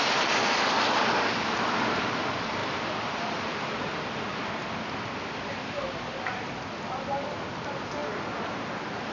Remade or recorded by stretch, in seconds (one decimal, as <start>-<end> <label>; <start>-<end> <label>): 0.0-9.1 recorded